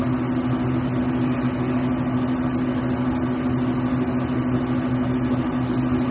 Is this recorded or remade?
recorded